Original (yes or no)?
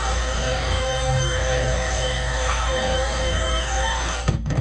no